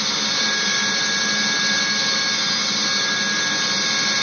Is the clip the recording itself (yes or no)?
yes